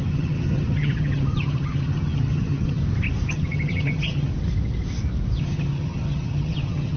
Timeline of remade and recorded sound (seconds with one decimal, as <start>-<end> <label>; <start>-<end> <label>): 0.0-2.8 remade; 2.8-3.3 recorded; 3.3-4.3 remade; 4.3-5.4 recorded; 5.4-7.0 remade